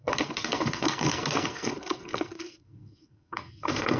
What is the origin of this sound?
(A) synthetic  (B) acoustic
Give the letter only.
A